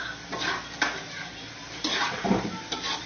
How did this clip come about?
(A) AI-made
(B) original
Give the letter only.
B